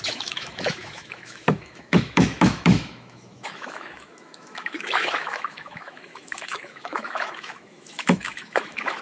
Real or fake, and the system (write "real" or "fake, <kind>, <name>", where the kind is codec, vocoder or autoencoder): fake, autoencoder, DAC-VAE